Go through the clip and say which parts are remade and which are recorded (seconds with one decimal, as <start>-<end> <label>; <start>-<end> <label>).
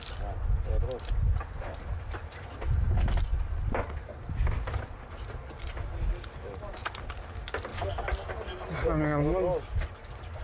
0.0-10.4 recorded